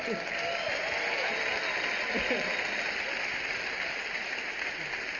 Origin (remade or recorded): recorded